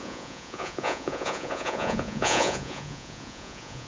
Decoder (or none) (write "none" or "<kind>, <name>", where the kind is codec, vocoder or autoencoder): vocoder, Vocos